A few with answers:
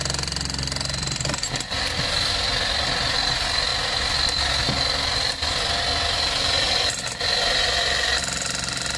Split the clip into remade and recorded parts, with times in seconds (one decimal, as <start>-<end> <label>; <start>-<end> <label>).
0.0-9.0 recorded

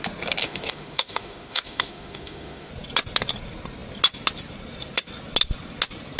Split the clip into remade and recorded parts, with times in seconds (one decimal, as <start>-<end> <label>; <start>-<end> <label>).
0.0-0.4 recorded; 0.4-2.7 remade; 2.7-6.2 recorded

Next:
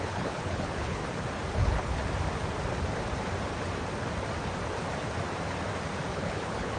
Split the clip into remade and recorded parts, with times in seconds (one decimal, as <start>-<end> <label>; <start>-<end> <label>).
0.0-1.0 remade; 1.0-1.5 recorded; 1.5-2.0 remade; 2.0-6.1 recorded; 6.1-6.8 remade

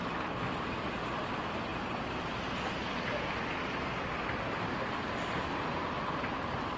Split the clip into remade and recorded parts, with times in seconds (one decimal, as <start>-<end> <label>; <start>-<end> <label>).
0.0-6.8 recorded

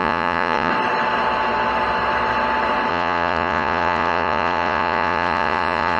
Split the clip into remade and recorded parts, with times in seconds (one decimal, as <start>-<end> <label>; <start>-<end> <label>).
0.0-0.7 remade; 0.7-2.9 recorded; 2.9-6.0 remade

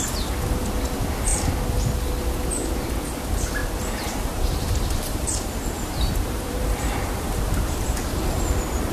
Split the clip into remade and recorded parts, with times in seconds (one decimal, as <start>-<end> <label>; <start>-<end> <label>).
0.0-3.6 recorded; 3.6-8.3 remade; 8.3-8.9 recorded

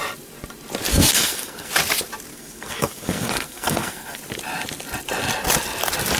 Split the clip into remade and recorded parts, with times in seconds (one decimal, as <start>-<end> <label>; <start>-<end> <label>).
0.0-0.9 recorded; 0.9-1.7 remade; 1.7-2.3 recorded; 2.3-4.2 remade; 4.2-6.2 recorded